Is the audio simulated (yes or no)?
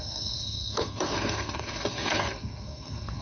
yes